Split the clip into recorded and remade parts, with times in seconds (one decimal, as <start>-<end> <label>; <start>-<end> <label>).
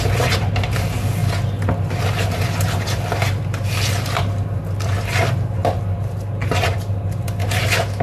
0.0-8.0 recorded